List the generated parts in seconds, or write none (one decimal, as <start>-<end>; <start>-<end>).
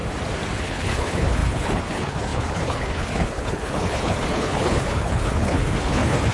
0.6-6.3